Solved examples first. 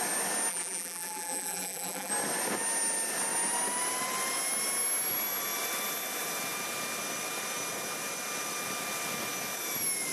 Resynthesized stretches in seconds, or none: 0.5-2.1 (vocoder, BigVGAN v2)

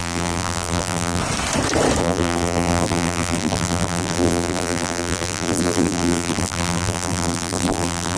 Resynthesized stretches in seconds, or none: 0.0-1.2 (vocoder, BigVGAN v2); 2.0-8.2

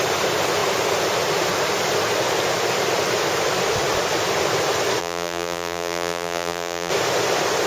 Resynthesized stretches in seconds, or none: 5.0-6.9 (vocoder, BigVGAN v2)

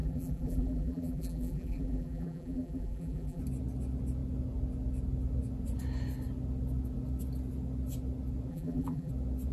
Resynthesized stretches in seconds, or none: 0.0-3.4 (vocoder, BigVGAN v2); 8.5-9.1

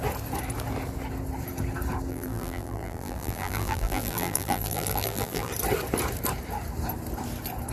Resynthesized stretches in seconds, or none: 2.1-5.5 (vocoder, BigVGAN v2)